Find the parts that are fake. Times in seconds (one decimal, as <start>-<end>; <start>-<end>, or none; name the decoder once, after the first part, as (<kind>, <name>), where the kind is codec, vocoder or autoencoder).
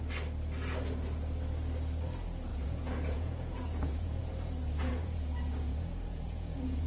2.5-4.2 (vocoder, Vocos); 4.8-6.9